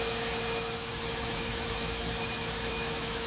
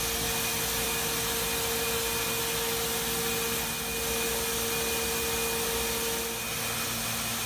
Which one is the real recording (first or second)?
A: second